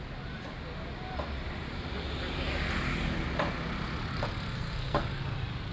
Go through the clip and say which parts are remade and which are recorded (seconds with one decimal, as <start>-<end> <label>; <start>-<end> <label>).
0.0-4.1 recorded; 4.1-5.2 remade; 5.2-5.7 recorded